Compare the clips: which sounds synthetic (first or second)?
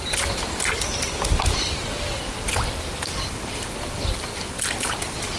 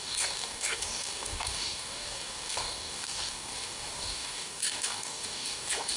second